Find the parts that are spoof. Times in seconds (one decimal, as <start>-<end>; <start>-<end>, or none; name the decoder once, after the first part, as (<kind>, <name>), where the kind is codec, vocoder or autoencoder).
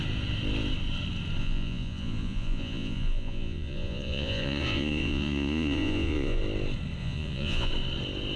1.4-6.4 (vocoder, Vocos); 7.0-7.7